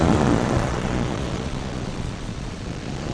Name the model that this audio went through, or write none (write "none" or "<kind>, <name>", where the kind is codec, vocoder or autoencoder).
vocoder, Vocos